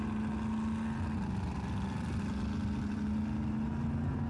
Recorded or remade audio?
recorded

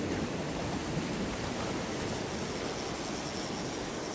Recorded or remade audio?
recorded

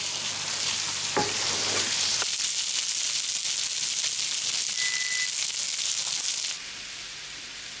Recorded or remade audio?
recorded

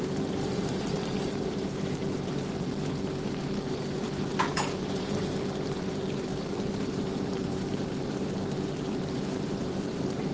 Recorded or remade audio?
remade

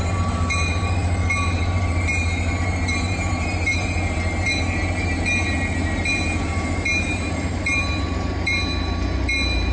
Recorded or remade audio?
remade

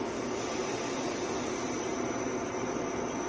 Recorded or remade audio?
recorded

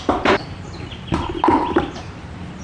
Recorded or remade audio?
remade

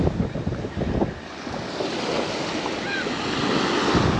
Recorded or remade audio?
recorded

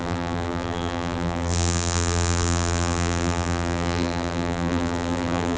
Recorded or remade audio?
remade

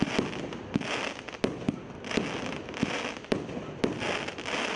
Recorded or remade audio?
recorded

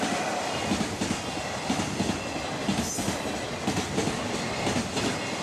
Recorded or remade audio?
recorded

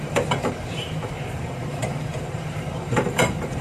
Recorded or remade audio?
remade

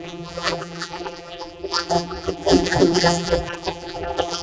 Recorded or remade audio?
remade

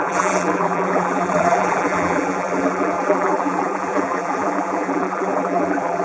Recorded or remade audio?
remade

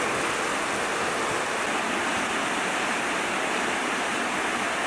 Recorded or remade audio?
recorded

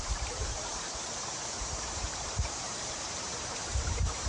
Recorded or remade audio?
remade